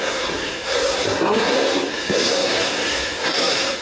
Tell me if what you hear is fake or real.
fake